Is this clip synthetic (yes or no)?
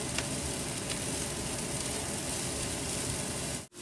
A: no